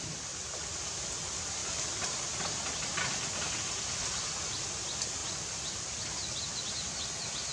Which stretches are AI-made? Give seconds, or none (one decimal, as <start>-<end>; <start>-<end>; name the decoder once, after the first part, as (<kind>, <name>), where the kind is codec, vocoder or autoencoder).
none